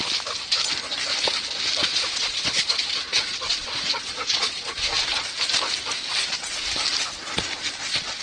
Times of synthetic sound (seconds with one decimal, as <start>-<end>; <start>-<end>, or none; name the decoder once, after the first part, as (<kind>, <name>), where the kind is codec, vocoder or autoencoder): 1.8-5.1 (vocoder, Vocos)